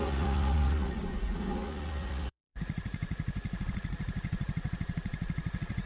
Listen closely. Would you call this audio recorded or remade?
remade